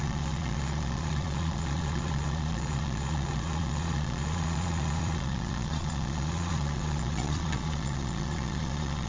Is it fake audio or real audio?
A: fake